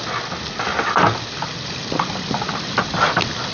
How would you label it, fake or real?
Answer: real